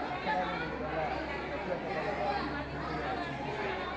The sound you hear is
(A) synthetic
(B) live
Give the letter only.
B